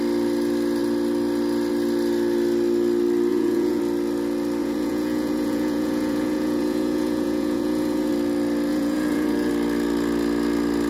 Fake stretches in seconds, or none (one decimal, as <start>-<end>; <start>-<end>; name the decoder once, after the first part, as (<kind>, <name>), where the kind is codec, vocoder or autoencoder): 3.3-3.8 (vocoder, Vocos); 4.6-8.1; 8.7-9.5

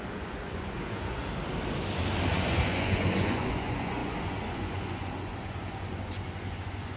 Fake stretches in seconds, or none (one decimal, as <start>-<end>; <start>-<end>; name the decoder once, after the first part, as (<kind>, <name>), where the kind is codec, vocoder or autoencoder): 0.0-1.2 (vocoder, Vocos); 2.3-7.0

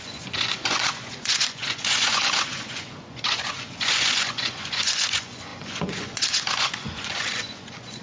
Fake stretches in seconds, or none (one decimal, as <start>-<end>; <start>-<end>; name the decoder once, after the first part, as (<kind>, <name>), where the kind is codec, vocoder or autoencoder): 0.0-8.0 (vocoder, Vocos)

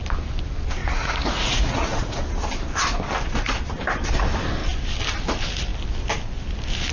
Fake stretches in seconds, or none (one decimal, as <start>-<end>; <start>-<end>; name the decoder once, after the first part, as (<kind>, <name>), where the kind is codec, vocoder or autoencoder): 0.8-2.2 (vocoder, Vocos)

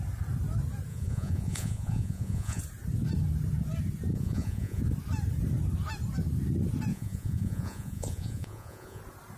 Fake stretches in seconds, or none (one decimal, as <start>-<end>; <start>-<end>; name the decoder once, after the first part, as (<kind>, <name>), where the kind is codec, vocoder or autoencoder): 0.9-2.6 (vocoder, Vocos); 4.1-4.8; 6.9-9.0

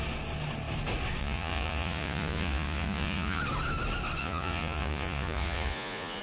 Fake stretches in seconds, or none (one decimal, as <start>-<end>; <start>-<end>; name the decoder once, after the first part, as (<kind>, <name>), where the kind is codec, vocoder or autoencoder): 1.2-3.4 (vocoder, Vocos); 4.2-6.2

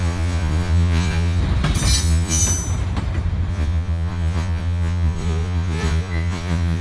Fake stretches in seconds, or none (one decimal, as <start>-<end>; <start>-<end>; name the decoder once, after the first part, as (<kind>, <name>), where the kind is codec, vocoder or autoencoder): 0.0-1.4 (vocoder, Vocos); 2.0-2.4; 3.5-6.8